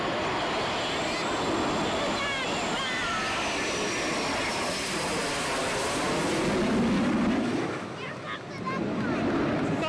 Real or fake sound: real